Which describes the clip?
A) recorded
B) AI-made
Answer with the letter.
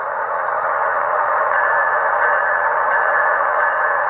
B